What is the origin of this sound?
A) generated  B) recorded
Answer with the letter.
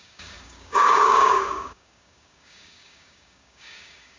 A